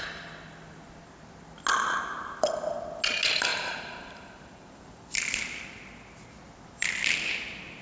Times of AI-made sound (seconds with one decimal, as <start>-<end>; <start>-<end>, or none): 3.5-4.8